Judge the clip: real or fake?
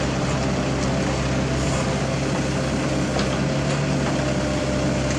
real